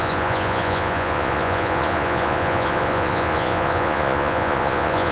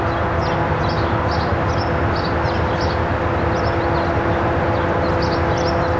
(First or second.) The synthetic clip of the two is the first